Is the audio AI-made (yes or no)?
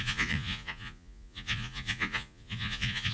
yes